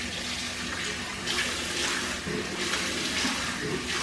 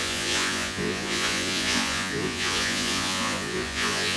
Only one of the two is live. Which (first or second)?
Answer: first